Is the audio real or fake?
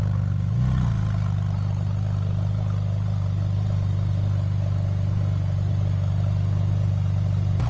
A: real